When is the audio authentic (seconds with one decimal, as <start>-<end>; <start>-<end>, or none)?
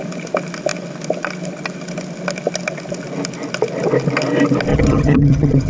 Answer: 0.0-4.7